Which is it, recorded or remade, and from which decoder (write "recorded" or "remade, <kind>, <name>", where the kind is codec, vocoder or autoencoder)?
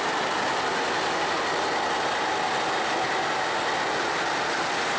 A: recorded